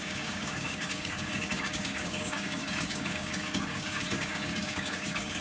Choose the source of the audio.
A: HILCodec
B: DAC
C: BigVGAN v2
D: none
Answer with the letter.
B